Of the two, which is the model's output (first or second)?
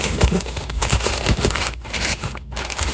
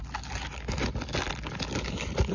first